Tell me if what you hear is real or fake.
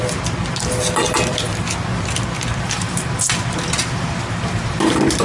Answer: real